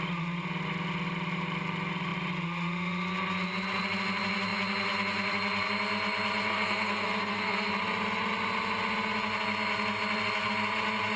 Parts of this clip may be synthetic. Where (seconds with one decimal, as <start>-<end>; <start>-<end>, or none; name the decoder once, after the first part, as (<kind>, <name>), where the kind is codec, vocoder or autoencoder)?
6.5-7.7 (codec, SNAC)